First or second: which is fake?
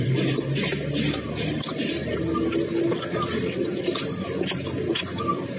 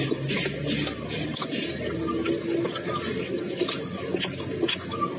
first